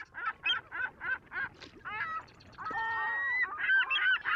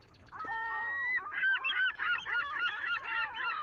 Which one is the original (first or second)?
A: first